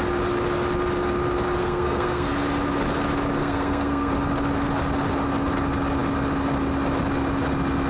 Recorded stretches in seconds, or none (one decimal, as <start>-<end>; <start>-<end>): 0.0-1.6; 2.3-3.4; 4.1-7.9

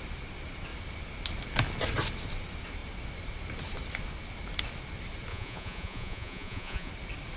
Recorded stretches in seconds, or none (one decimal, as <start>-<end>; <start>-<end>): 0.0-5.3; 6.9-7.4

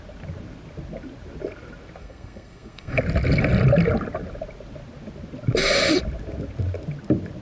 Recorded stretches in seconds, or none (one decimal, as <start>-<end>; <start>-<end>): 0.0-2.0; 3.0-7.4

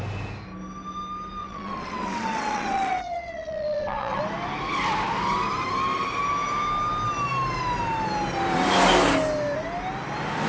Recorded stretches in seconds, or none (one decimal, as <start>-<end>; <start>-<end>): 0.0-1.4; 4.2-10.5